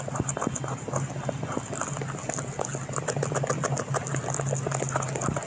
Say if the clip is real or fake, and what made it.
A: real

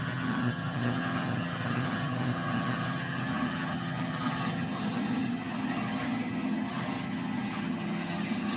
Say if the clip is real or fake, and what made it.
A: fake, vocoder, HiFi-GAN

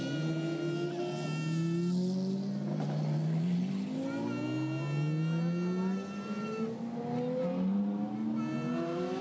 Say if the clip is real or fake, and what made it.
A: real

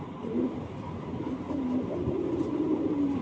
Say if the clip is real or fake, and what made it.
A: real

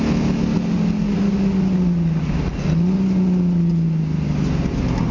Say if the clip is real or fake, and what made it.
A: real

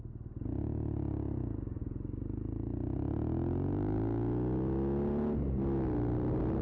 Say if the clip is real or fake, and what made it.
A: real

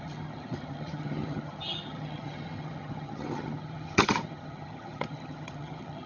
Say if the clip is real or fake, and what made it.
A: fake, vocoder, HiFi-GAN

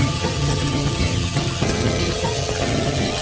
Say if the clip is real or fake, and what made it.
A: fake, vocoder, HiFi-GAN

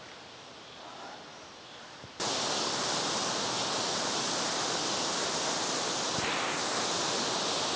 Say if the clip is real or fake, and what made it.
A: real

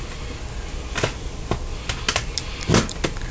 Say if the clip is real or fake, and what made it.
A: real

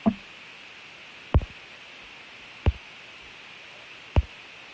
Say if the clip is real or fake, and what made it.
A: real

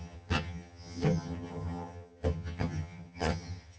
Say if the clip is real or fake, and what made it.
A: fake, vocoder, HiFi-GAN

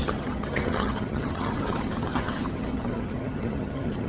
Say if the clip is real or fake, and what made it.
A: fake, vocoder, HiFi-GAN